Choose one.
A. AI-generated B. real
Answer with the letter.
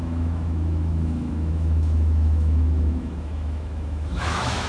A